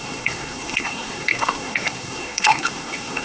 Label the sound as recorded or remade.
remade